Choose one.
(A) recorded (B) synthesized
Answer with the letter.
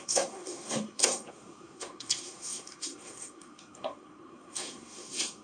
B